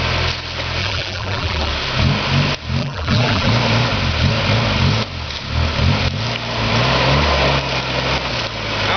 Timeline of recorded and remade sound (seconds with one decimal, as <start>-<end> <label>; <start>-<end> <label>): 0.0-0.8 recorded; 0.8-1.7 remade; 1.7-2.8 recorded; 2.8-3.5 remade; 3.5-9.0 recorded